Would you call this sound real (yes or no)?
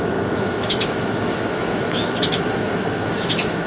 no